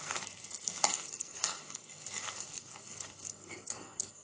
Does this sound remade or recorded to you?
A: remade